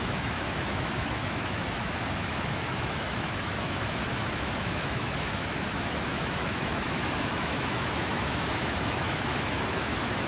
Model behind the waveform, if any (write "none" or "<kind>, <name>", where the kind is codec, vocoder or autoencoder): autoencoder, DAC-VAE